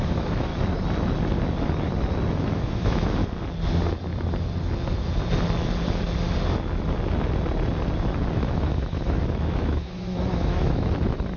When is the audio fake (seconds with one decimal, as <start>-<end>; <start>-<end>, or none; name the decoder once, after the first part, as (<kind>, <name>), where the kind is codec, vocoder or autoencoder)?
0.0-0.5 (autoencoder, DAC-VAE); 2.3-3.2; 8.3-11.4